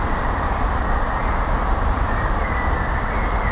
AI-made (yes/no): no